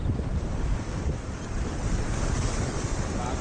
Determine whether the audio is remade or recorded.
remade